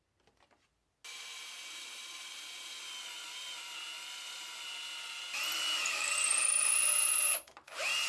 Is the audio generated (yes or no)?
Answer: no